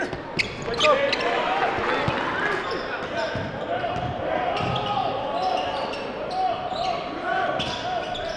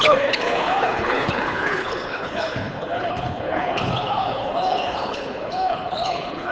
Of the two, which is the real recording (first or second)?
first